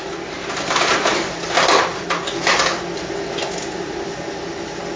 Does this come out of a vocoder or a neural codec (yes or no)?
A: no